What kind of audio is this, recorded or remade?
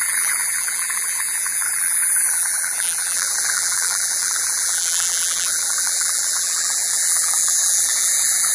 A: remade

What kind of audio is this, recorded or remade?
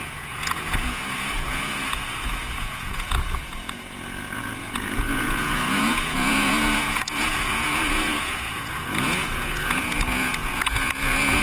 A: remade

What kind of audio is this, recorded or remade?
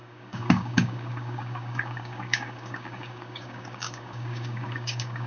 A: remade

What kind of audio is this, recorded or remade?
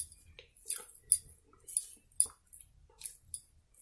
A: recorded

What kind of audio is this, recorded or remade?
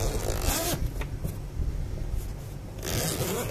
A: recorded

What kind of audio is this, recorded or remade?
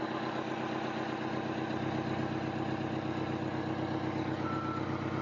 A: recorded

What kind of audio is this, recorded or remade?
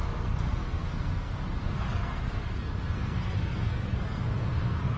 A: remade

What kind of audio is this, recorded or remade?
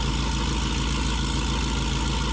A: recorded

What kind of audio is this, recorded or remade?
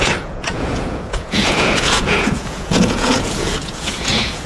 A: remade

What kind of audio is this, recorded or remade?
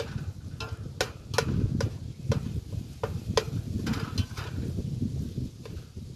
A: recorded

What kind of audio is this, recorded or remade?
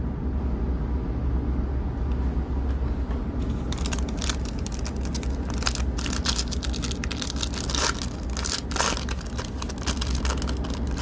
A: recorded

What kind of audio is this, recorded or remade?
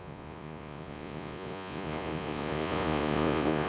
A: remade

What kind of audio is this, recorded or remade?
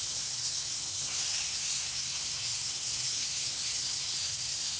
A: remade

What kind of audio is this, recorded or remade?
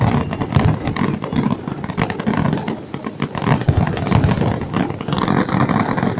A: recorded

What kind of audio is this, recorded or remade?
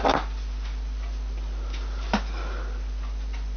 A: recorded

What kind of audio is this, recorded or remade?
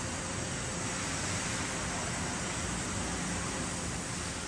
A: recorded